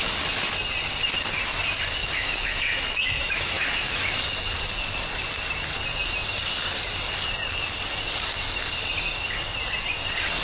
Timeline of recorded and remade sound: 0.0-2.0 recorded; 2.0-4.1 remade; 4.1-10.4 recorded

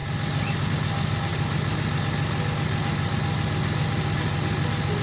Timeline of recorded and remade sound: 0.0-5.0 recorded

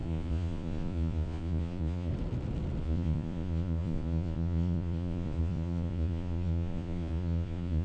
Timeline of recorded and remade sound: 0.0-2.1 remade; 2.1-2.8 recorded; 2.8-7.8 remade

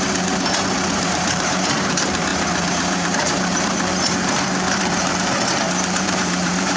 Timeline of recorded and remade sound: 0.0-6.8 remade

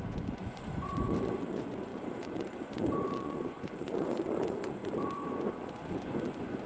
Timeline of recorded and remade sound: 0.0-6.7 remade

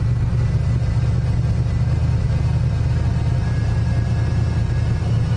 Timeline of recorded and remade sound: 0.0-5.4 recorded

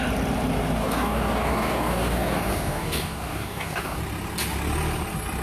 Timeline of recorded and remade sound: 0.0-0.8 recorded; 0.8-4.0 remade; 4.0-5.4 recorded